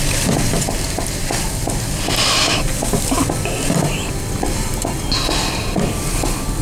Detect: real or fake real